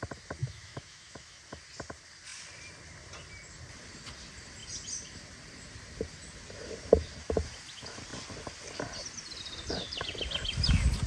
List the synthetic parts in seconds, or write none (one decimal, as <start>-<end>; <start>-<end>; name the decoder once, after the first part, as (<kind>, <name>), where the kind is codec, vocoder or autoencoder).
0.4-1.4 (autoencoder, DAC-VAE)

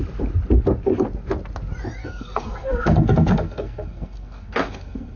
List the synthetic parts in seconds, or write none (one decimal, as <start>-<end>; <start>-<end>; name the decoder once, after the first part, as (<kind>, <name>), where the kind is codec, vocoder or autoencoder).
2.0-5.2 (codec, SNAC)

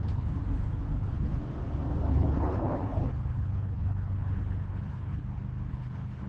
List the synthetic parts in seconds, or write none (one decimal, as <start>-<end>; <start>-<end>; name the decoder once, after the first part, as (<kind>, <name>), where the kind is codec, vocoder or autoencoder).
0.0-1.4 (codec, HILCodec); 2.1-5.2; 5.7-6.3

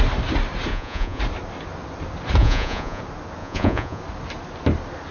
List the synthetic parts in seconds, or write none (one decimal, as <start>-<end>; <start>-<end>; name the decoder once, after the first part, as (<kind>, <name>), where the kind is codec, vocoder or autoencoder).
0.7-1.2 (vocoder, Vocos); 2.4-3.0; 3.4-4.0

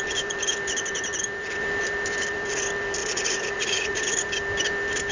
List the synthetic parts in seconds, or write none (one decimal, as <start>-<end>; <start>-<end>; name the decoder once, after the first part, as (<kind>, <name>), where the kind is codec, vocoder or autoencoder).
3.0-4.3 (vocoder, Vocos)